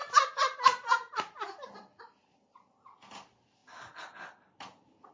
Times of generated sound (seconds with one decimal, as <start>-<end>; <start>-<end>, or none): none